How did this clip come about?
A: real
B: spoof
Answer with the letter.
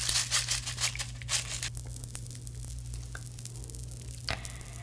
A